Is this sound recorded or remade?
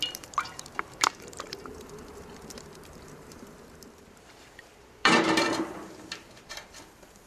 remade